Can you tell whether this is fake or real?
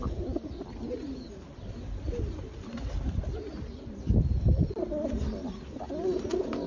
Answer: real